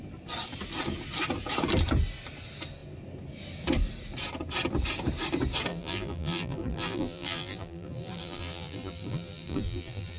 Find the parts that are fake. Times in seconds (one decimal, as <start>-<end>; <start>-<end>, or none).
5.7-10.2